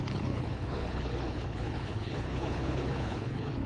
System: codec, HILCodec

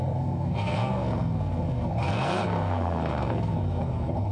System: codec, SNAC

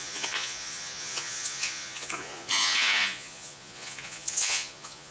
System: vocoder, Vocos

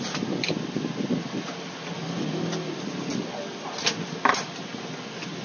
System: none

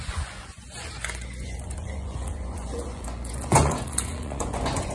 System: vocoder, Vocos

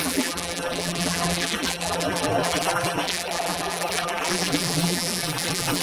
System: vocoder, BigVGAN v2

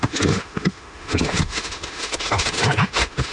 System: autoencoder, DAC-VAE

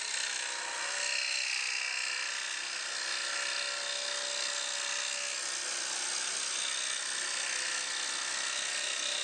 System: none